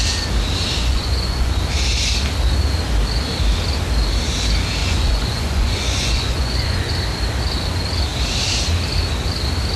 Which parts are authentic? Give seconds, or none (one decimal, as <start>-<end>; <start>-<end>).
0.0-0.8; 1.6-4.8; 6.9-9.8